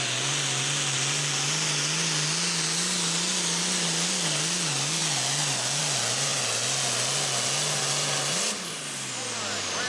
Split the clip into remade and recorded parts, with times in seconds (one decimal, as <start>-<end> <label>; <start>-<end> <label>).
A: 0.0-9.9 recorded